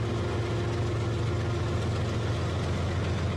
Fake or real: real